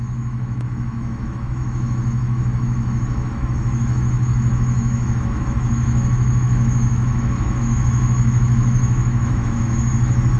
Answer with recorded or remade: remade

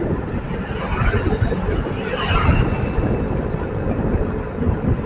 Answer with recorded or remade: recorded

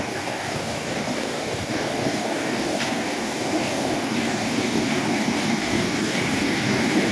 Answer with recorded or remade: remade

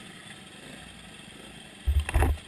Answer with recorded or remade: recorded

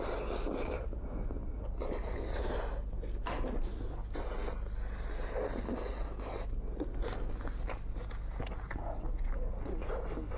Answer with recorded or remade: recorded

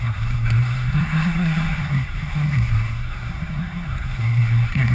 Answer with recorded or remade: remade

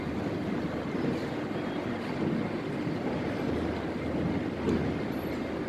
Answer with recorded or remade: recorded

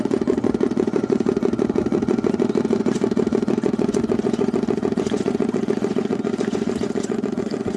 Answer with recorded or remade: remade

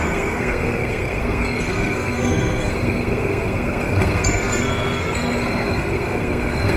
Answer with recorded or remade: remade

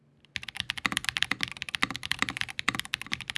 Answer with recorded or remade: recorded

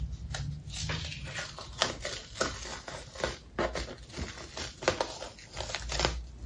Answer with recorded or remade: recorded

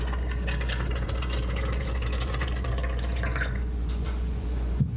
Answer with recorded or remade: remade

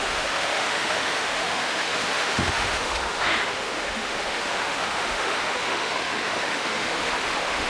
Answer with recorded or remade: remade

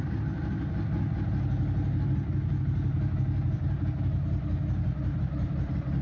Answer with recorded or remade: recorded